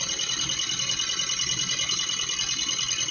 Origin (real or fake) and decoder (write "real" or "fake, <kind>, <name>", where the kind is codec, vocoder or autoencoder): real